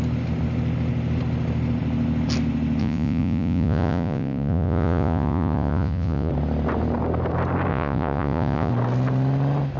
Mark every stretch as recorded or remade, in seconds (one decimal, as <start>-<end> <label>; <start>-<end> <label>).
0.0-2.8 recorded; 2.8-6.3 remade; 6.3-7.7 recorded; 7.7-8.7 remade; 8.7-9.8 recorded